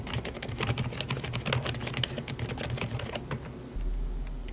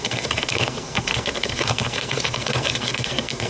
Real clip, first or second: first